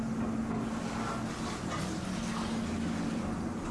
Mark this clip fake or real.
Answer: real